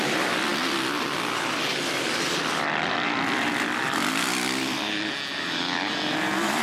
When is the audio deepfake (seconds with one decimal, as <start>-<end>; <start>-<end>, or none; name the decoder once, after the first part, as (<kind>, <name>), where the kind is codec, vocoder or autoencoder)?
0.0-0.5 (vocoder, BigVGAN v2); 4.1-6.6